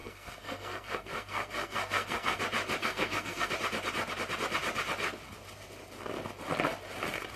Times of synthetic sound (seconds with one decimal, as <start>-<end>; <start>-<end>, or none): 0.0-2.4; 2.8-3.5